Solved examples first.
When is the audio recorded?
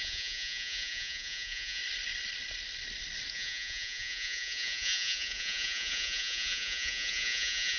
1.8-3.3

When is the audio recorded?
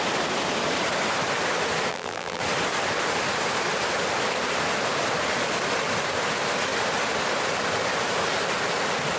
0.0-1.9; 2.4-9.2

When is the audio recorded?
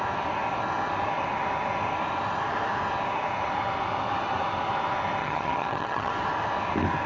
0.0-5.2; 6.1-7.1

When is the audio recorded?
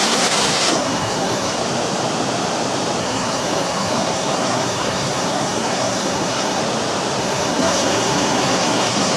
1.6-3.0; 6.6-7.2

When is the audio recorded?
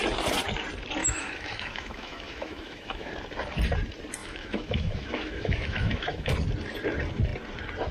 0.0-1.0; 3.1-4.2; 6.3-7.9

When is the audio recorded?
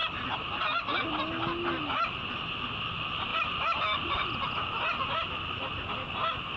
0.0-3.3; 4.2-6.6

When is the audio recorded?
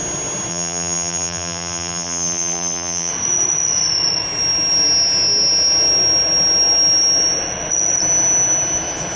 0.0-0.5; 3.1-9.2